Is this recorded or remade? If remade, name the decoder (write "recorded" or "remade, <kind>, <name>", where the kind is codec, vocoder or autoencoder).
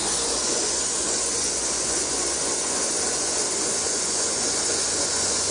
remade, vocoder, Vocos